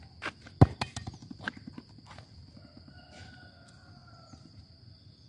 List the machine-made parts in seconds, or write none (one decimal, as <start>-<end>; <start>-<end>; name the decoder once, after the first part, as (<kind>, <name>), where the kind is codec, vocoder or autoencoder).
1.2-3.3 (vocoder, BigVGAN v2); 4.0-4.6